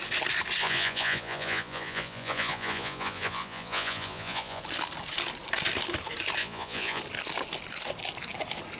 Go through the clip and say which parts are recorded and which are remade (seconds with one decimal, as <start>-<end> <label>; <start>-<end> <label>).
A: 0.0-0.6 recorded; 0.6-4.6 remade; 4.6-6.4 recorded; 6.4-7.0 remade; 7.0-8.8 recorded

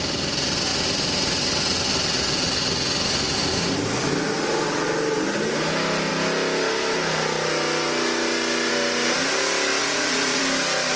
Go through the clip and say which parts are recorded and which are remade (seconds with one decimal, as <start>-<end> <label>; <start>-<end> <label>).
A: 0.0-9.8 recorded; 9.8-10.4 remade; 10.4-11.0 recorded

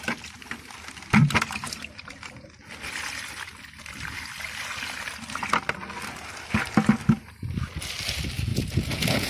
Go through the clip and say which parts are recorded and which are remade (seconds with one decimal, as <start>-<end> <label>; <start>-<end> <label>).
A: 0.0-8.5 recorded; 8.5-9.3 remade

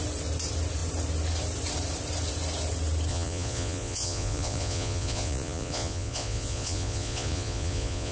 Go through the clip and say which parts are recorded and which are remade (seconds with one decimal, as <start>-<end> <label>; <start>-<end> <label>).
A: 0.0-3.1 recorded; 3.1-8.1 remade

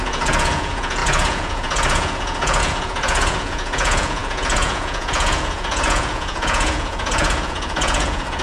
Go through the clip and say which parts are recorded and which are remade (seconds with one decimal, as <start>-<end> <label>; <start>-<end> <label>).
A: 0.0-8.4 remade